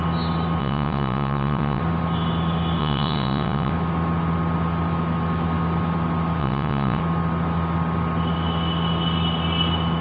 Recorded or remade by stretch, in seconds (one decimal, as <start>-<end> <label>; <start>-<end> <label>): 0.0-0.6 recorded; 0.6-1.8 remade; 1.8-2.8 recorded; 2.8-3.7 remade; 3.7-6.4 recorded; 6.4-7.0 remade; 7.0-10.0 recorded